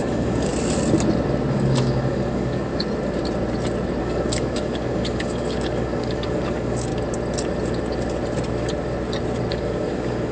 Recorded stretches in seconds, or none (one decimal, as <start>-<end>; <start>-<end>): 0.5-1.5; 2.7-4.0; 6.9-9.5